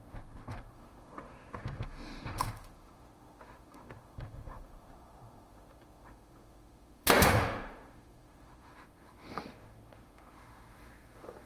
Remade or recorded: remade